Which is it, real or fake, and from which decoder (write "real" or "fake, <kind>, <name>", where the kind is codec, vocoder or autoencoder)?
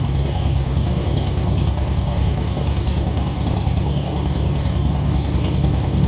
fake, codec, DAC